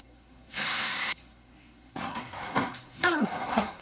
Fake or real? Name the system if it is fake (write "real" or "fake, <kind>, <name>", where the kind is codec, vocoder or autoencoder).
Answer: fake, codec, SNAC